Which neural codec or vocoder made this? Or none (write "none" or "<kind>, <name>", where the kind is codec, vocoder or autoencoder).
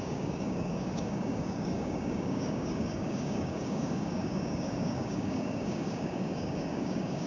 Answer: codec, DAC